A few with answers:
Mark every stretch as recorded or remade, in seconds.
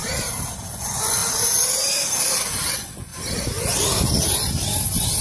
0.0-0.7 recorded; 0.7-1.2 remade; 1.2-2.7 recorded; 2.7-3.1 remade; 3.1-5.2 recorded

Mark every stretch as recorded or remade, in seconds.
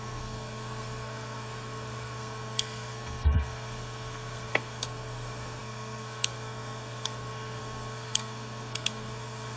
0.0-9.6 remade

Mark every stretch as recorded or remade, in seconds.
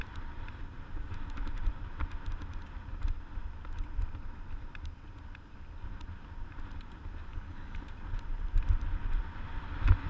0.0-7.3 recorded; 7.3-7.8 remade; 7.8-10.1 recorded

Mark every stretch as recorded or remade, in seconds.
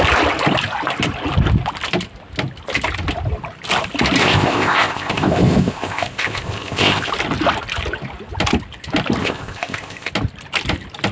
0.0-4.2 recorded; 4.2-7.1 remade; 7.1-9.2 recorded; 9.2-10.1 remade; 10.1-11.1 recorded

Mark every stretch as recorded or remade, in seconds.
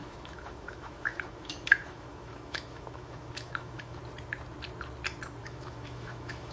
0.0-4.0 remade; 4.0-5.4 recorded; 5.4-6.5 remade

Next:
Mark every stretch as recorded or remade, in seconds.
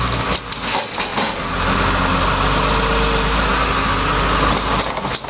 0.0-1.1 recorded; 1.1-2.0 remade; 2.0-5.3 recorded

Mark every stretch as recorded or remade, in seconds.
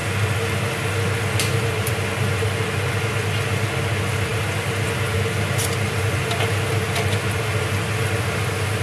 0.0-8.8 recorded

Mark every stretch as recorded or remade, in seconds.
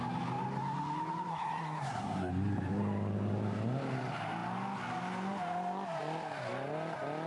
0.0-1.3 recorded; 1.3-2.3 remade; 2.3-7.3 recorded